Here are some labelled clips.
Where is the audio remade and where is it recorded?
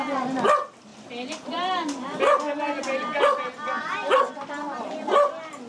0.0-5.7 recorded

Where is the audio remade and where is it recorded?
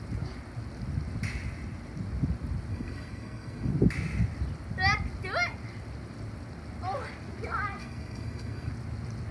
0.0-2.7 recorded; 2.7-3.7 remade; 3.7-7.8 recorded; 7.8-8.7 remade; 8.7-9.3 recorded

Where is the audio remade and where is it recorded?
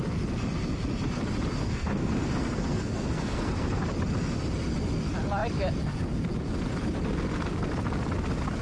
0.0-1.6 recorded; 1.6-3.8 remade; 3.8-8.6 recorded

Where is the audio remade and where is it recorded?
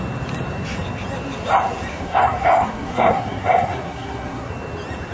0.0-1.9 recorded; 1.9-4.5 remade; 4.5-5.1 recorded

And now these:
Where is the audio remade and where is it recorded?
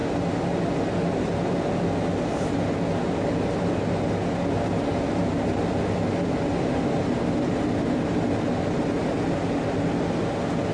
0.0-10.7 recorded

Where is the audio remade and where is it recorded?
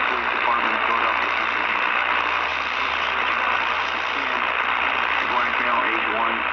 0.0-6.5 recorded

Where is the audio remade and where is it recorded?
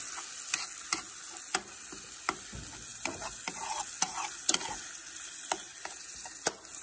0.0-6.8 recorded